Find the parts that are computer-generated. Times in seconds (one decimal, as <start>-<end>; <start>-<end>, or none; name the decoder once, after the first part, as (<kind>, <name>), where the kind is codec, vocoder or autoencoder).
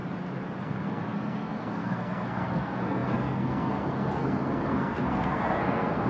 0.6-6.1 (codec, SNAC)